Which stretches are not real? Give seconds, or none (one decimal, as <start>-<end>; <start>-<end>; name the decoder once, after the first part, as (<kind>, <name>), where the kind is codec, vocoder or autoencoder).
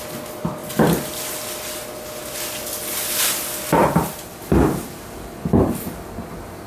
0.6-1.2 (vocoder, BigVGAN v2); 3.8-4.4